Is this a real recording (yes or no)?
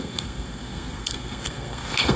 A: no